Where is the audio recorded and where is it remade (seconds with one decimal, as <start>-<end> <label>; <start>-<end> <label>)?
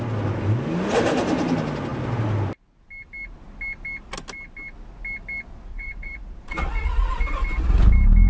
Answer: 0.0-5.7 recorded; 5.7-7.1 remade; 7.1-8.3 recorded